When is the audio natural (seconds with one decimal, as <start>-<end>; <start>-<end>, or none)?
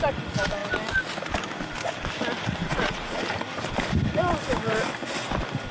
0.0-2.6; 3.2-5.7